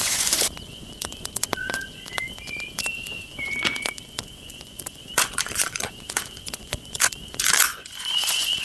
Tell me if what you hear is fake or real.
fake